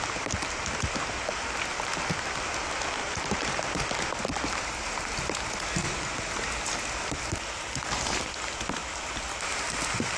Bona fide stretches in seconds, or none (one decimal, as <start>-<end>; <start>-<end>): 0.0-3.0; 3.8-10.2